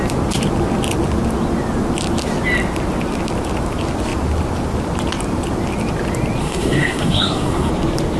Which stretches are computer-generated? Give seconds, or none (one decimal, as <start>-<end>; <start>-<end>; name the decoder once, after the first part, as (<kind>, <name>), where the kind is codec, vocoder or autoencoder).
6.4-7.7 (codec, SNAC)